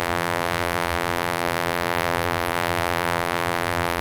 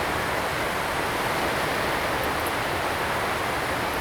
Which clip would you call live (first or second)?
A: second